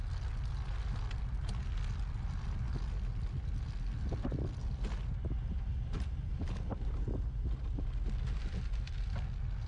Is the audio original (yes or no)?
yes